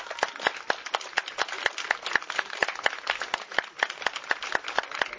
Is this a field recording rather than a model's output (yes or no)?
yes